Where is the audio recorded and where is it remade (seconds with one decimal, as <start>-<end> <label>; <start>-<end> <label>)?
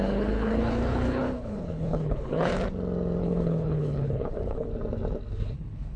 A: 0.0-2.5 remade; 2.5-3.2 recorded; 3.2-4.7 remade; 4.7-5.3 recorded; 5.3-6.0 remade